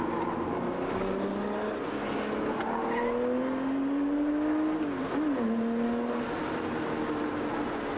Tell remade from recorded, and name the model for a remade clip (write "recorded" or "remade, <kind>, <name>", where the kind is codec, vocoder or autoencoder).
recorded